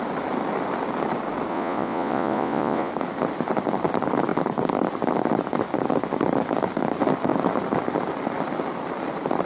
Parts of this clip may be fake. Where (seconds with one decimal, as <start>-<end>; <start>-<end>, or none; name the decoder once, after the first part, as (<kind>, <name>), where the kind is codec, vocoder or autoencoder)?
1.5-2.9 (vocoder, Vocos)